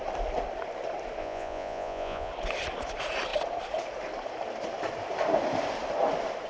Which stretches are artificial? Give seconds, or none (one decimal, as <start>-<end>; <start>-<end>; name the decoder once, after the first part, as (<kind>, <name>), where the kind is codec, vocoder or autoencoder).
1.2-2.3 (vocoder, Vocos)